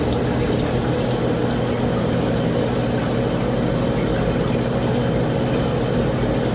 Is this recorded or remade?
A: recorded